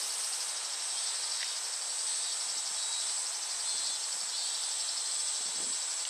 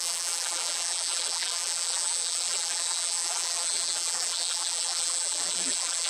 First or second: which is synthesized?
second